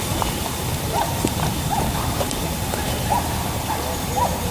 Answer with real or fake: fake